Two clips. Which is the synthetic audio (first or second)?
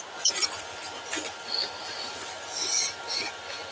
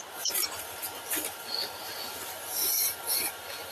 second